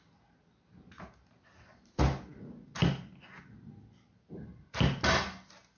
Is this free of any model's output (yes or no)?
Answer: yes